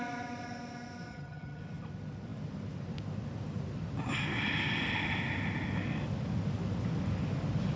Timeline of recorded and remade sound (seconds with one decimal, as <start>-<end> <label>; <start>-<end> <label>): 0.0-1.1 recorded; 1.1-1.6 remade; 1.6-7.8 recorded